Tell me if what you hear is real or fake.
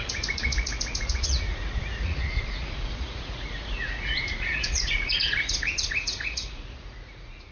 fake